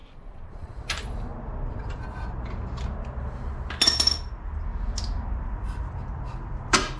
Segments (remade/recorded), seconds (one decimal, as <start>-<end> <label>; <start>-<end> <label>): 0.0-0.8 remade; 0.8-7.0 recorded